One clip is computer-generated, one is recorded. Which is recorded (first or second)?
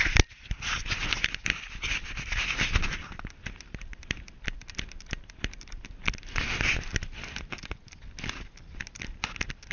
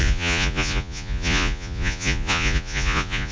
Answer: first